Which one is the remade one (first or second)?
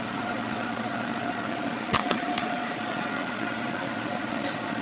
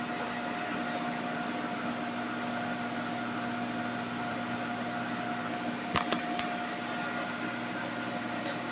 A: first